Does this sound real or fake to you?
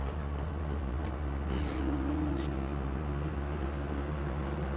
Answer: fake